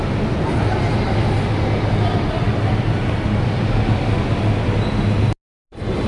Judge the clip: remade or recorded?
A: recorded